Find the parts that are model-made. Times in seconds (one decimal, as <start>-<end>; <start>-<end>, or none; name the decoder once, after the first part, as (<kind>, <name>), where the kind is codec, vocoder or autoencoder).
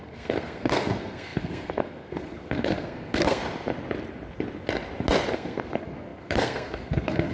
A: 0.0-3.4 (codec, SNAC); 5.3-7.3